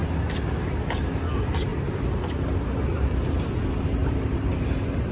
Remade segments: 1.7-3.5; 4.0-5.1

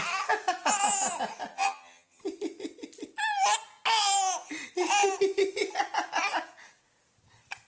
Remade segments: 1.5-2.2

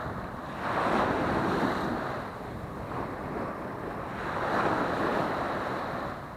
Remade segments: none

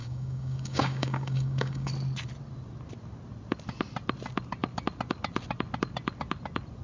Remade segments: 0.0-1.9

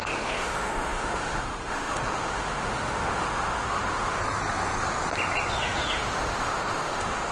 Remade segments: 0.0-4.2; 5.5-7.3

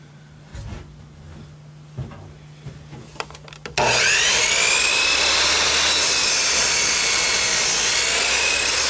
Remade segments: 0.0-0.5; 4.0-4.4; 6.6-7.5; 8.4-8.9